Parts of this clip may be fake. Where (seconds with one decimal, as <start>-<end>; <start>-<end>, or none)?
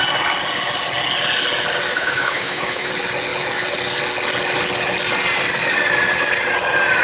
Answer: 1.9-2.9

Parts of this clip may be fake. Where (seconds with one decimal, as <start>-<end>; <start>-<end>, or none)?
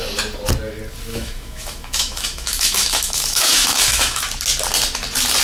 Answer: 1.1-4.2